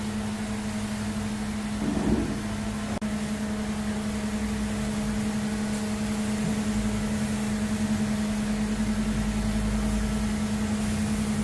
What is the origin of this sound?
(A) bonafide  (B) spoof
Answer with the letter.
A